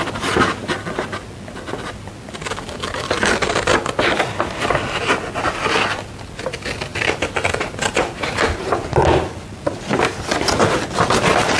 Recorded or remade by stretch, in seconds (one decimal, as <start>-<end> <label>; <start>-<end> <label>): 0.0-11.6 recorded